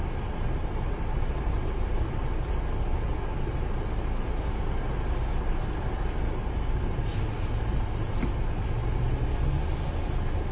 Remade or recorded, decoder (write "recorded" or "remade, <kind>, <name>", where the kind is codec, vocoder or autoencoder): recorded